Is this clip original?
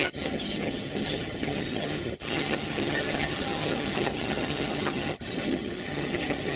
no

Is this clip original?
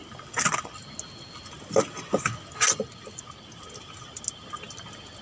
yes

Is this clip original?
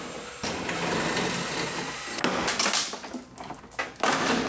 yes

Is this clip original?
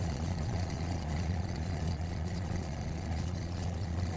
no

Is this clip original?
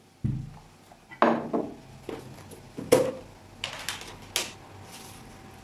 yes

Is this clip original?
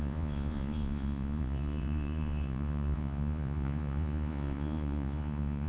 no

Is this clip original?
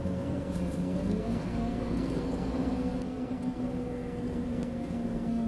no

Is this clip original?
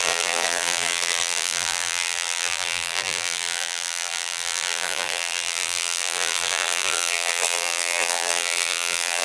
no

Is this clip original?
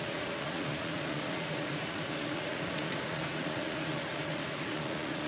no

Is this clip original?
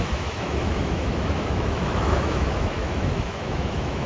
no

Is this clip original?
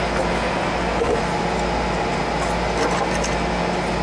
yes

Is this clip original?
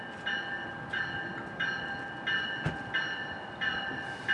yes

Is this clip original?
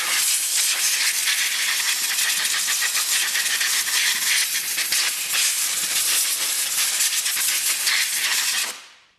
no